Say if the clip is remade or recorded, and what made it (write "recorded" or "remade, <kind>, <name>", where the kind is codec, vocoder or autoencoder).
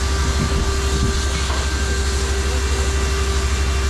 recorded